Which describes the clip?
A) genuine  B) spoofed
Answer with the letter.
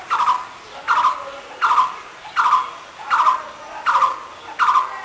A